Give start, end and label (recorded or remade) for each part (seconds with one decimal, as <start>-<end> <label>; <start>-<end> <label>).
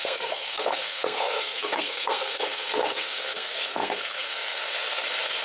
0.0-5.4 remade